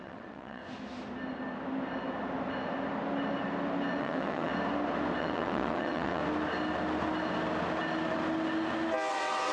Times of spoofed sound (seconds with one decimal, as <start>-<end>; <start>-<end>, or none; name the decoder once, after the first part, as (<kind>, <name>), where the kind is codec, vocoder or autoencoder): 0.0-0.6 (vocoder, WaveNeXt); 4.0-4.5; 5.2-6.2; 9.1-9.5